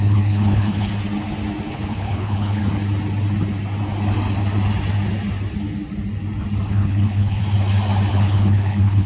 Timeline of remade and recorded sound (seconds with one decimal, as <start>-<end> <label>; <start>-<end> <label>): 0.0-0.9 remade; 0.9-1.7 recorded; 1.7-2.6 remade; 2.6-6.7 recorded; 6.7-7.4 remade; 7.4-8.1 recorded; 8.1-9.1 remade

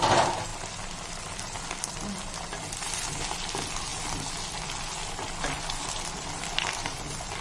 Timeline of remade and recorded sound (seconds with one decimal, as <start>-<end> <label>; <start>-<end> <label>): 0.0-7.4 recorded

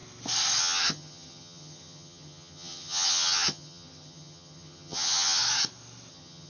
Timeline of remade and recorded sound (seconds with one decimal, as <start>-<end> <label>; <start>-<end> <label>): 0.0-0.6 recorded; 0.6-5.4 remade; 5.4-6.1 recorded; 6.1-6.5 remade

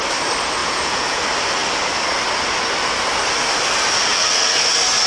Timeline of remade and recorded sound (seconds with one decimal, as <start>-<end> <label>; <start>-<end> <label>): 0.0-0.6 recorded; 0.6-1.2 remade; 1.2-5.1 recorded

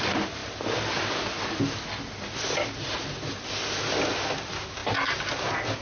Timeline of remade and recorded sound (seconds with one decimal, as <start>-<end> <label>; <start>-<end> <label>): 0.0-5.8 recorded

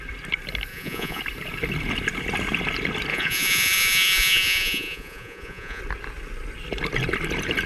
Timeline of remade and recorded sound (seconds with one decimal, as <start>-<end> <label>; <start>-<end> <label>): 0.0-0.7 recorded; 0.7-1.2 remade; 1.2-3.1 recorded; 3.1-5.8 remade; 5.8-7.7 recorded